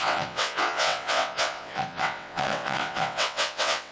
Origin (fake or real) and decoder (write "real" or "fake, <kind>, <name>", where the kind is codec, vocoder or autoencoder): fake, vocoder, WaveNeXt